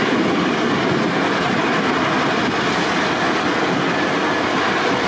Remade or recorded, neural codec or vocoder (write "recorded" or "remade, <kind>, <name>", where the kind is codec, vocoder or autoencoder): recorded